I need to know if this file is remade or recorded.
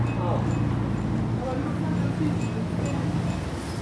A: recorded